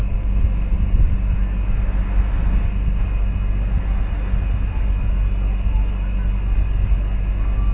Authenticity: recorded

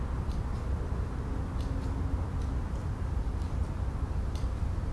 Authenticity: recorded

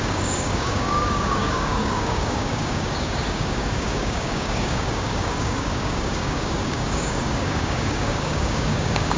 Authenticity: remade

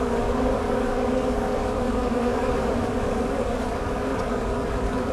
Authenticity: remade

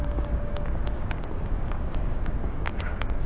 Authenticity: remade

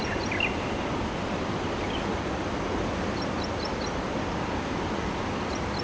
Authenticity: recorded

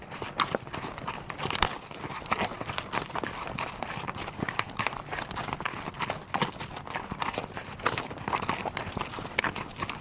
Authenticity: recorded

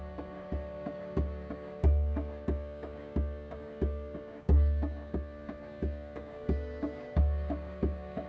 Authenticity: remade